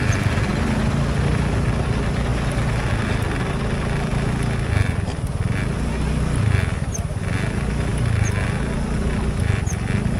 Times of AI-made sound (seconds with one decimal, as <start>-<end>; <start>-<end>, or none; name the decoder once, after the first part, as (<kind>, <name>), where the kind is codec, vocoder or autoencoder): 0.0-10.2 (vocoder, BigVGAN v2)

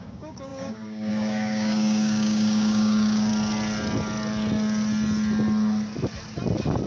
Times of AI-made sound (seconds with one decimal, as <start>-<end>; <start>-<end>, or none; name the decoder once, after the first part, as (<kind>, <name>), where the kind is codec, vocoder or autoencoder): 0.0-3.3 (codec, DAC)

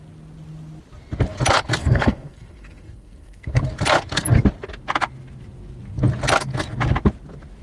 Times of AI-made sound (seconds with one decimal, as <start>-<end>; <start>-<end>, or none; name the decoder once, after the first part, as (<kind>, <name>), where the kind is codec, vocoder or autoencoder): 1.8-3.6 (codec, SNAC)

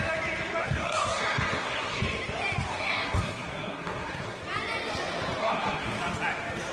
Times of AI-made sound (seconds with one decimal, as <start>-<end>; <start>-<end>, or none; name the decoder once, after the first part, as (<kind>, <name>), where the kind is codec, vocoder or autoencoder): 0.6-2.0 (codec, SNAC); 2.7-4.4; 5.4-6.0

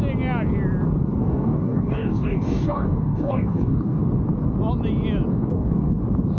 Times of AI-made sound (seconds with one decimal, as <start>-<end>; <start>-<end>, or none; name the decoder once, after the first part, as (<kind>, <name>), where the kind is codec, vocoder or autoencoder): 1.2-4.0 (codec, DAC); 5.3-6.0

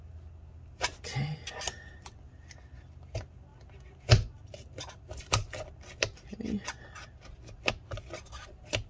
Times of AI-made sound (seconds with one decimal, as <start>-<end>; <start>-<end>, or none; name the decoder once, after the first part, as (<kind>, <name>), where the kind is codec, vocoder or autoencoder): none